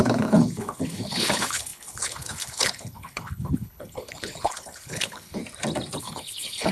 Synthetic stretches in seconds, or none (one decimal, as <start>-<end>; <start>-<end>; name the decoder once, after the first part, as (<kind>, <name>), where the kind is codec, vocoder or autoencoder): 0.0-5.4 (codec, HILCodec); 6.0-6.7